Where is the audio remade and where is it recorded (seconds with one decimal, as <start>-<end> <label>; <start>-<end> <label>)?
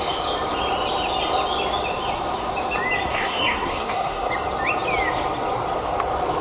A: 0.0-3.1 recorded; 3.1-4.3 remade; 4.3-6.4 recorded